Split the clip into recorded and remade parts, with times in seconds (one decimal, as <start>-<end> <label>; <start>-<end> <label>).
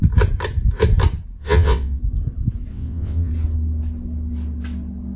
0.0-1.4 recorded; 1.4-2.0 remade; 2.0-2.7 recorded; 2.7-3.3 remade; 3.3-5.2 recorded